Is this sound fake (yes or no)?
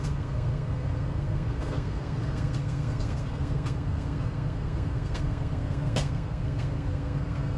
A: yes